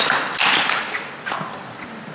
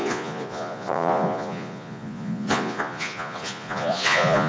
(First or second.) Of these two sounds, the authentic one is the first